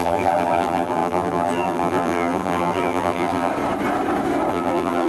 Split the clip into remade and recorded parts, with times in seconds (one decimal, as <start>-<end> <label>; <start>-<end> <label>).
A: 0.0-3.5 remade; 3.5-4.5 recorded; 4.5-5.1 remade